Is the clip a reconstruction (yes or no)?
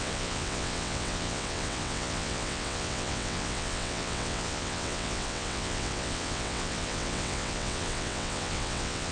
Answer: yes